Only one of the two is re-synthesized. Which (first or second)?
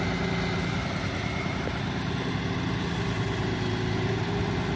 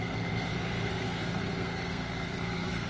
second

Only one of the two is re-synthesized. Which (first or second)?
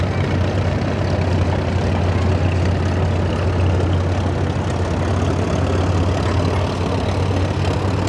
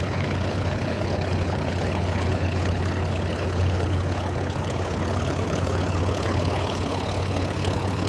second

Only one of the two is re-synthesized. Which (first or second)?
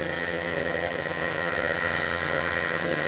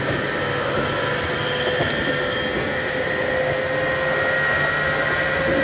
first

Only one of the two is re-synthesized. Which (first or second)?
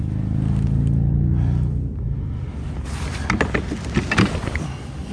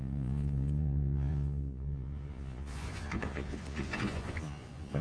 second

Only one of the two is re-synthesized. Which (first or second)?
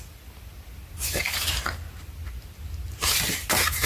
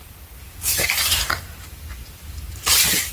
second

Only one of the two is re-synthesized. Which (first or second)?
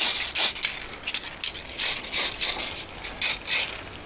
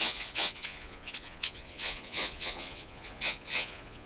second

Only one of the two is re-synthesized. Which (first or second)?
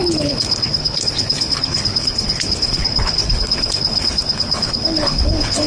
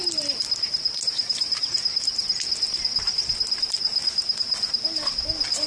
first